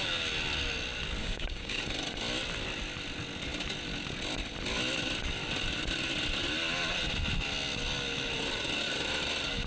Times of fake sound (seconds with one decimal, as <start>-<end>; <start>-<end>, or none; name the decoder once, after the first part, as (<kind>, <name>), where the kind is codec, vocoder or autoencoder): 1.2-1.8 (codec, DAC)